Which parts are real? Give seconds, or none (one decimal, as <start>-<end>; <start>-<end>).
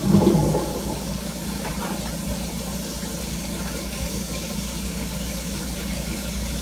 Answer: 1.7-3.2